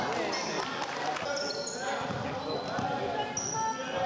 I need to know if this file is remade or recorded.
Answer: recorded